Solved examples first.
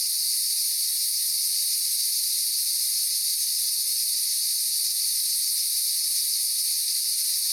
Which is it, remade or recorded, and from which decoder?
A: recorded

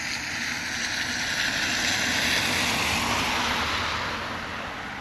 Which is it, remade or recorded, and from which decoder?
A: recorded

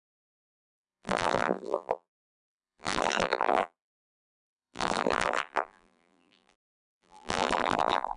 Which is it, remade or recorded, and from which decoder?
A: remade, vocoder, BigVGAN v2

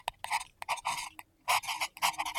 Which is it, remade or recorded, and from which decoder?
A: recorded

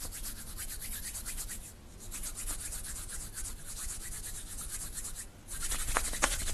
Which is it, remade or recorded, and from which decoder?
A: recorded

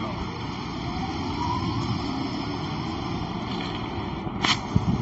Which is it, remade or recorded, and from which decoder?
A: remade, vocoder, BigVGAN v2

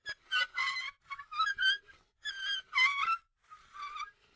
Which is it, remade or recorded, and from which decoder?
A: remade, vocoder, BigVGAN v2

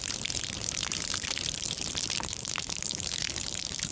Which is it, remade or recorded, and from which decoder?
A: remade, vocoder, BigVGAN v2